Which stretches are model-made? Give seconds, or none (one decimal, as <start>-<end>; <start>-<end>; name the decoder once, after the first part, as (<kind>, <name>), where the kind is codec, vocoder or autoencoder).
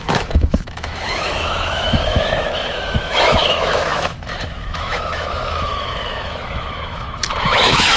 0.0-8.0 (autoencoder, DAC-VAE)